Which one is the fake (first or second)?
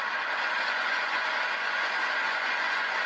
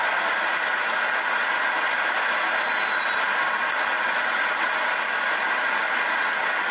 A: first